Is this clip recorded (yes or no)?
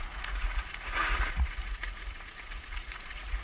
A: no